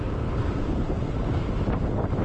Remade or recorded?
remade